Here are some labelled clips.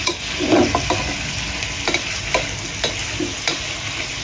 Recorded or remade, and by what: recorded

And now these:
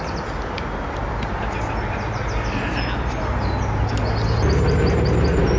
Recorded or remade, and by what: recorded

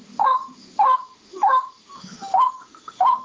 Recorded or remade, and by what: remade, autoencoder, DAC-VAE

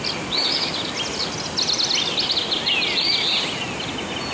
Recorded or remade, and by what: recorded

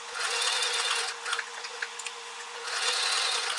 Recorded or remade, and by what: remade, vocoder, Vocos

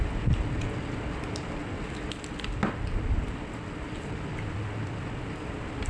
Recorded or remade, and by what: recorded